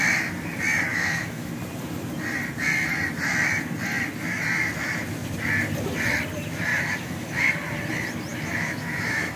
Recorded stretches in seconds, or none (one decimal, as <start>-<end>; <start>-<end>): 0.0-0.9; 1.5-6.7; 7.4-8.3